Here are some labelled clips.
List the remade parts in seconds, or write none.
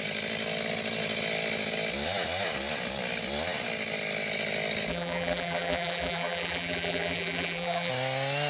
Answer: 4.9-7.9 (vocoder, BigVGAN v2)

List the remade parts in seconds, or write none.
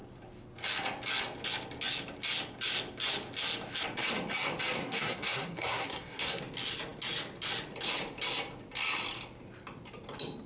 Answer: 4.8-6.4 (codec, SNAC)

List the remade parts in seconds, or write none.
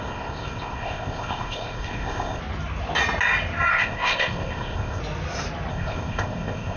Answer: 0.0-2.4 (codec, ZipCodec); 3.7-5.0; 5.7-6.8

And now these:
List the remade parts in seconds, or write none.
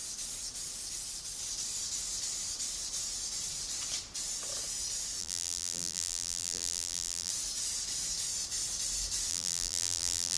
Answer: 5.2-7.3 (vocoder, BigVGAN v2); 9.3-10.4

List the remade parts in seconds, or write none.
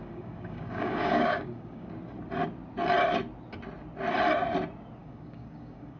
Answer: 0.0-1.9 (codec, DAC); 5.0-6.0